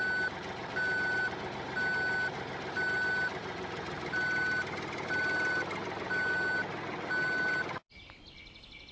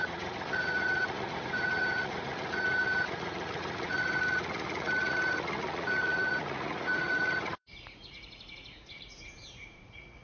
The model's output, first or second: second